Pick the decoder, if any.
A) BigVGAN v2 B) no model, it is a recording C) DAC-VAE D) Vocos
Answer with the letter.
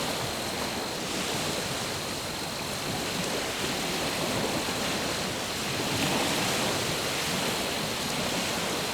B